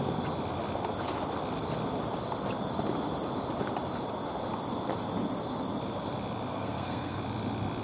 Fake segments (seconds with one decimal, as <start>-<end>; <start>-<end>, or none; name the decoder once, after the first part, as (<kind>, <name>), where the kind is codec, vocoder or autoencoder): 6.5-7.2 (codec, SNAC)